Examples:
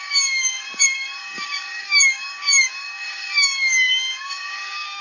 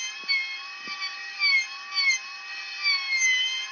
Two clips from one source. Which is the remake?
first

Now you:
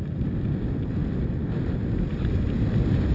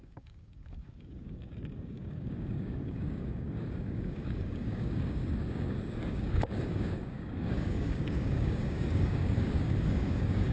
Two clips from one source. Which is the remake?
second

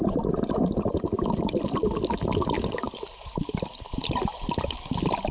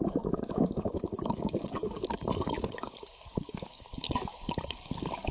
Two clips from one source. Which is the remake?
second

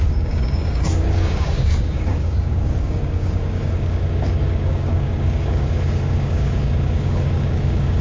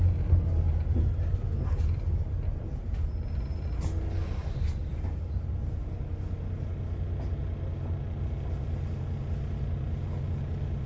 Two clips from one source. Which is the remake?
first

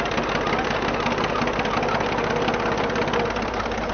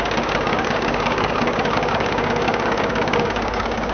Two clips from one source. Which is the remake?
second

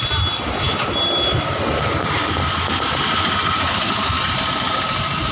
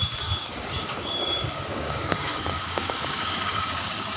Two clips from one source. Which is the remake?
second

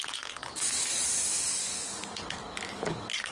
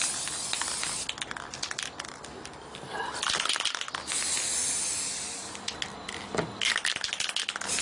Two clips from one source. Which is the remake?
first